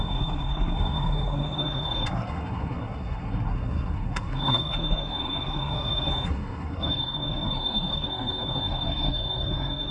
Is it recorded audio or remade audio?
remade